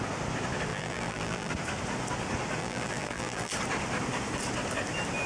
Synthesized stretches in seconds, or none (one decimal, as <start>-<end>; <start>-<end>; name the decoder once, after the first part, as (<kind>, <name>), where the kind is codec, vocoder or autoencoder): 0.7-1.5 (vocoder, BigVGAN v2); 2.6-3.5